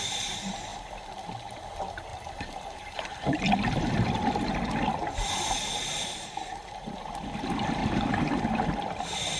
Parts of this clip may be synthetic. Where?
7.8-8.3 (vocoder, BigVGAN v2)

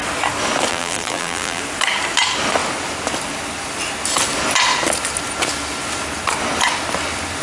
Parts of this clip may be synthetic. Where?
0.7-1.6 (vocoder, BigVGAN v2)

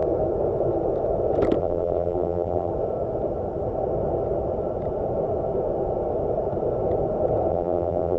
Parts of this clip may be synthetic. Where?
1.6-2.7 (vocoder, BigVGAN v2); 7.5-8.2

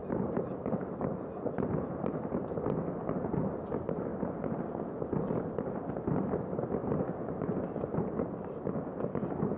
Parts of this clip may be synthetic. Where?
0.0-1.0 (vocoder, BigVGAN v2)

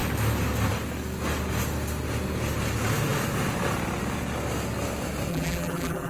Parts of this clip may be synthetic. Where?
5.3-6.1 (vocoder, BigVGAN v2)